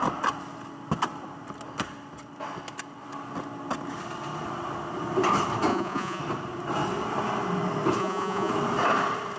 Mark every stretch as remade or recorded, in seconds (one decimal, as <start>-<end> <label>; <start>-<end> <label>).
0.0-5.7 recorded; 5.7-6.2 remade; 6.2-8.0 recorded; 8.0-8.5 remade; 8.5-9.4 recorded